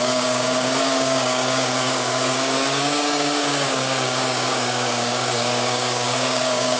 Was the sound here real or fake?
fake